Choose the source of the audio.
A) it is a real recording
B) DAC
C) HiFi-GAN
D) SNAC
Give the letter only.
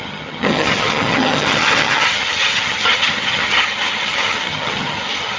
C